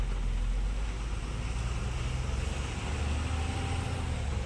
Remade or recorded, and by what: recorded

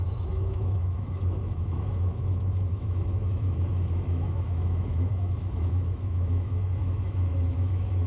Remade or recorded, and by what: remade, autoencoder, DAC-VAE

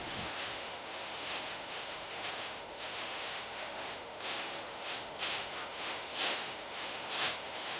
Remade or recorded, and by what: remade, autoencoder, DAC-VAE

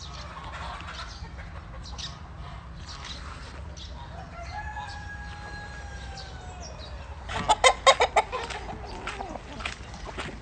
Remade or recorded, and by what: recorded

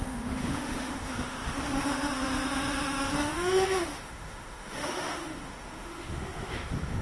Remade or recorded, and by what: remade, autoencoder, DAC-VAE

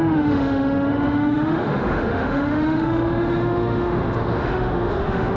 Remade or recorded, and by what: remade, autoencoder, DAC-VAE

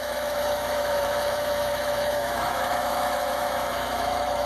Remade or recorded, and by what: remade, autoencoder, DAC-VAE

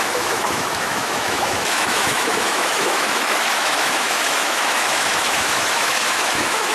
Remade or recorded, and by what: remade, autoencoder, DAC-VAE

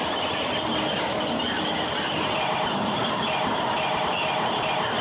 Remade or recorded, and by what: recorded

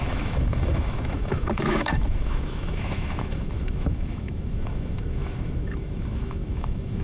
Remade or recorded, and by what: remade, autoencoder, DAC-VAE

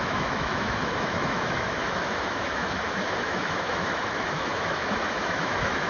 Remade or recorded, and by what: remade, autoencoder, DAC-VAE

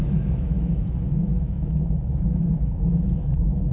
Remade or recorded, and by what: remade, autoencoder, DAC-VAE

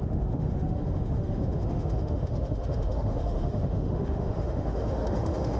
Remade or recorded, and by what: remade, autoencoder, DAC-VAE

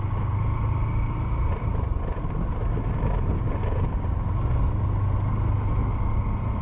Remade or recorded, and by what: recorded